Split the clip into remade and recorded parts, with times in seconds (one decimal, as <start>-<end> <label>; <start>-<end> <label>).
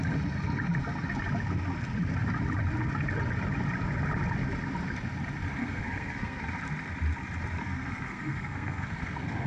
0.0-5.6 recorded; 5.6-6.4 remade; 6.4-7.6 recorded; 7.6-9.5 remade